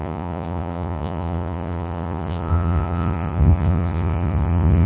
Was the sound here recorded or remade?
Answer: remade